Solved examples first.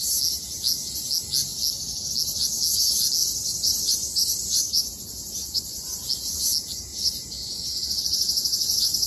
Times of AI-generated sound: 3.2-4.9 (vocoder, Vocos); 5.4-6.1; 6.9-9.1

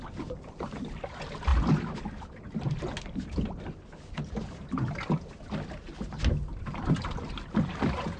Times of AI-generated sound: none

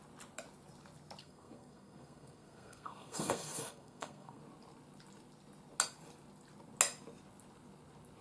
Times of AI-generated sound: 1.2-4.4 (codec, SNAC)

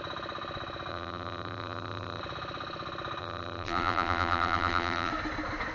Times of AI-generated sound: 0.9-2.2 (vocoder, BigVGAN v2); 3.2-5.1

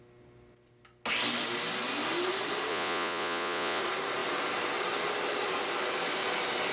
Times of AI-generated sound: 2.7-3.8 (vocoder, Vocos)